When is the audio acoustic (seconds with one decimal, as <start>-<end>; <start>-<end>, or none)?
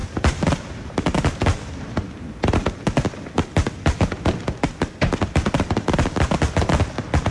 0.0-7.3